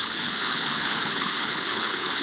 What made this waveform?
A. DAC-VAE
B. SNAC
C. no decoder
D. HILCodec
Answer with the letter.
D